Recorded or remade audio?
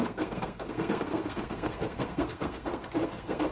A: remade